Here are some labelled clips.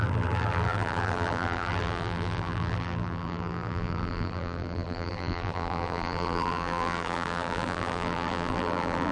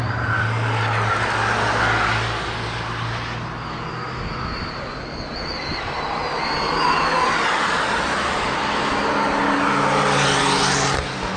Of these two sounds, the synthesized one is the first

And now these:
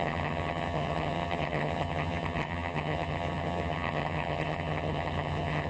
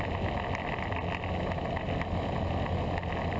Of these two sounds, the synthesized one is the first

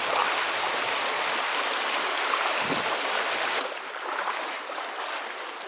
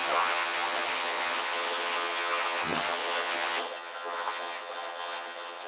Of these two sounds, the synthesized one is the second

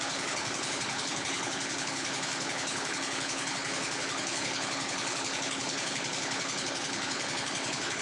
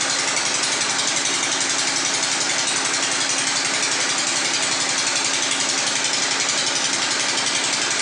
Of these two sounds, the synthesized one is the first